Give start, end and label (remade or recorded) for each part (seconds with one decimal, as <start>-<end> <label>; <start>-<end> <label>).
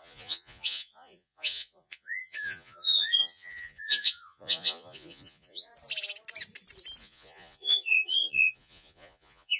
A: 0.0-5.7 remade; 5.7-7.0 recorded; 7.0-9.6 remade